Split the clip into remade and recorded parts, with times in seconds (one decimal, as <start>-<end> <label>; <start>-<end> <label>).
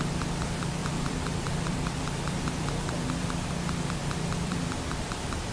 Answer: 0.0-0.8 recorded; 0.8-3.5 remade; 3.5-4.0 recorded; 4.0-4.8 remade; 4.8-5.5 recorded